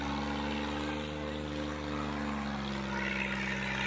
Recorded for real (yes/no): yes